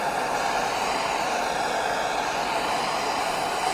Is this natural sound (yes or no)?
yes